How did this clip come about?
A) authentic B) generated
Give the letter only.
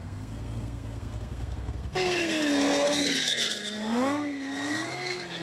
B